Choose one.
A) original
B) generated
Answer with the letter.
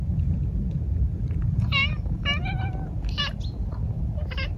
A